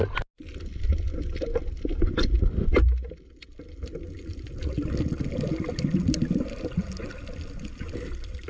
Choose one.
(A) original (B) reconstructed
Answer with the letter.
A